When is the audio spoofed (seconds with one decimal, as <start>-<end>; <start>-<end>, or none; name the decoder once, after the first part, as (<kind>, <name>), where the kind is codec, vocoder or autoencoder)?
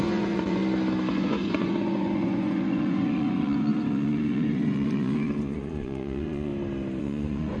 0.0-0.6 (vocoder, Vocos); 1.1-6.5; 7.0-7.6